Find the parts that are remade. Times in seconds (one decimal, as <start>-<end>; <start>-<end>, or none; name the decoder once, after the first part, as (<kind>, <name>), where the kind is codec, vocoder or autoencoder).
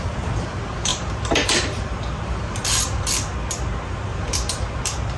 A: 0.9-3.1 (vocoder, BigVGAN v2); 4.1-4.8